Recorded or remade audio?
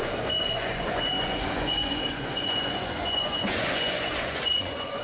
remade